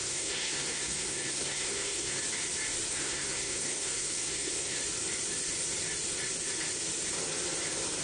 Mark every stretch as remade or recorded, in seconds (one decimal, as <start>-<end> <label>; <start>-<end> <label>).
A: 0.0-2.2 remade; 2.2-2.9 recorded; 2.9-4.8 remade; 4.8-8.0 recorded